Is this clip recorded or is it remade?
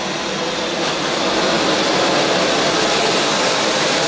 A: recorded